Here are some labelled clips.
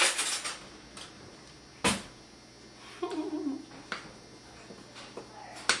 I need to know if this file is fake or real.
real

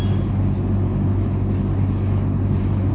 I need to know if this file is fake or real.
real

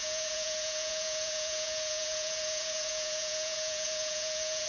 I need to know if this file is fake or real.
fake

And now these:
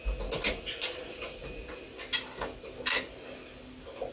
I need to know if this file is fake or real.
real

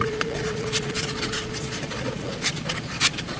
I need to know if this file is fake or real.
fake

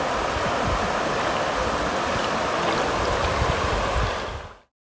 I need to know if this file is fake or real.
real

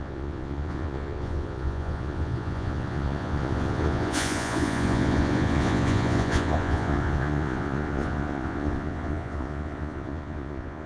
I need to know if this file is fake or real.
fake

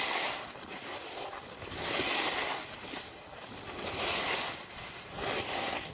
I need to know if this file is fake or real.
real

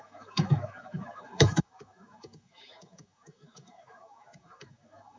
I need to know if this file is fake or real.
fake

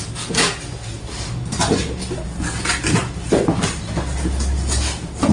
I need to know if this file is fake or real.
real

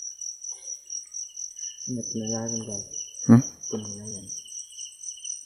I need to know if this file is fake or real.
fake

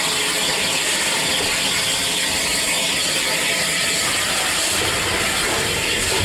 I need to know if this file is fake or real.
real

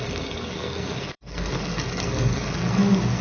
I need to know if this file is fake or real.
fake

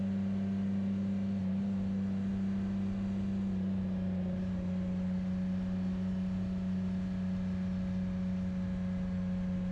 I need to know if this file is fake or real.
real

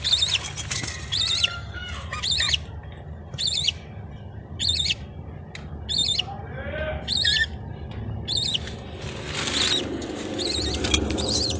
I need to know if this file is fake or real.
real